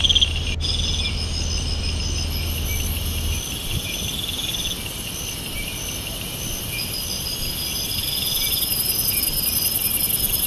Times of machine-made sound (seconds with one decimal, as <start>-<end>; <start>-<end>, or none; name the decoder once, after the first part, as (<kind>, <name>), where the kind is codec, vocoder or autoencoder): none